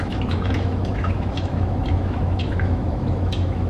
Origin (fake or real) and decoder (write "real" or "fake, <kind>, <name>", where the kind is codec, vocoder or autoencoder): fake, autoencoder, DAC-VAE